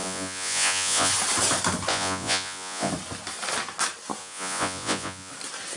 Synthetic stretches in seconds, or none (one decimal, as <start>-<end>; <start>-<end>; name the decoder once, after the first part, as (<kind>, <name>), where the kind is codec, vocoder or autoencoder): 0.0-1.1 (vocoder, Vocos); 1.9-2.9; 4.2-5.3